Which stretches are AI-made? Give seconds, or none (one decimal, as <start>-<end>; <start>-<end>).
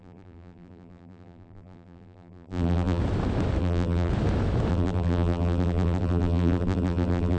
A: 0.0-3.0; 3.6-4.1; 4.7-7.4